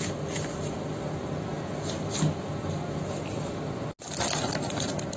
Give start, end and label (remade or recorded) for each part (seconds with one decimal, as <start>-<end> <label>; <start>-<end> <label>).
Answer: 0.0-1.5 remade; 1.5-4.6 recorded; 4.6-5.2 remade